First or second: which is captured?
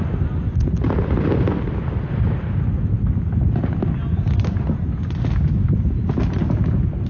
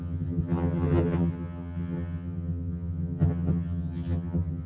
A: first